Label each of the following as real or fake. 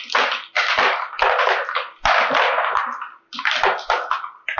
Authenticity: real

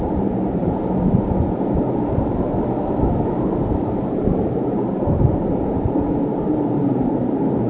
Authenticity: fake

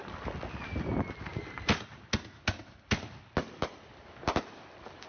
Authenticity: real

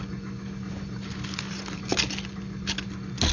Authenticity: real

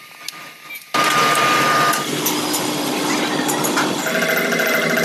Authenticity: real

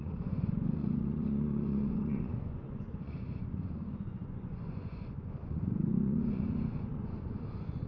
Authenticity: fake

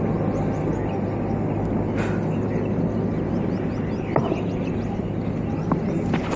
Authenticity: real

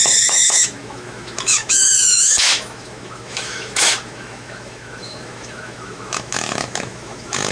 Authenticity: fake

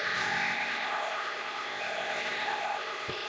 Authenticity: fake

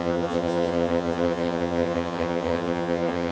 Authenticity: fake